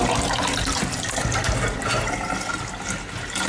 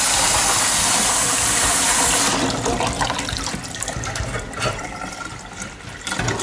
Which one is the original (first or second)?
first